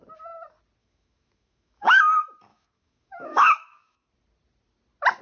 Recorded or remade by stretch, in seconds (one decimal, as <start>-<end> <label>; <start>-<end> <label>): 0.0-0.8 recorded; 0.8-2.0 remade; 2.0-2.5 recorded; 2.5-4.1 remade; 4.1-5.2 recorded